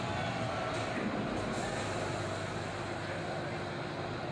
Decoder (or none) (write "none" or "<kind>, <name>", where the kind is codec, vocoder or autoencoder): none